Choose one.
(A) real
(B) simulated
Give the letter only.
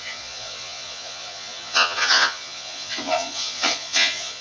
B